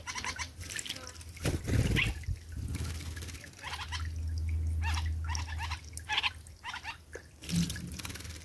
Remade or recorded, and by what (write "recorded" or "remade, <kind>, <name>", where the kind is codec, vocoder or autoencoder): recorded